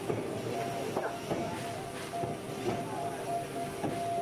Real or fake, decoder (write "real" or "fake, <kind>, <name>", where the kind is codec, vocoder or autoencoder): real